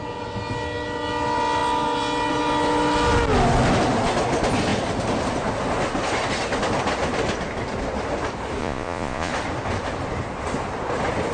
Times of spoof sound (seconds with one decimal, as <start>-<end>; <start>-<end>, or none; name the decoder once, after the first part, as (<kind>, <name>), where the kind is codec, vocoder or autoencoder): 8.6-9.3 (vocoder, Vocos)